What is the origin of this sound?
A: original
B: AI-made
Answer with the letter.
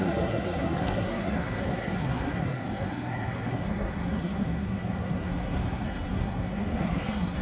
B